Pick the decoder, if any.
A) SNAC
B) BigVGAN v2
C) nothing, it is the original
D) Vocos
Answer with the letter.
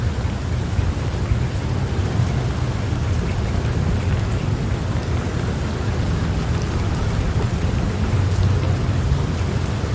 C